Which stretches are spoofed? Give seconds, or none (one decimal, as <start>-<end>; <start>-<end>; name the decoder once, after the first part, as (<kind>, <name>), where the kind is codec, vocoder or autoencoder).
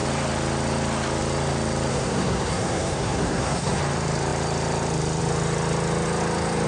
1.9-3.8 (codec, SNAC)